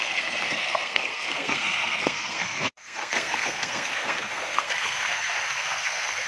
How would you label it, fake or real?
fake